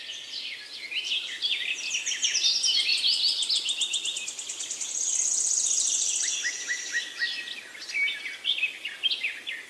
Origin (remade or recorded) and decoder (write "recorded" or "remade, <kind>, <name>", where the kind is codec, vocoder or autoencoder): recorded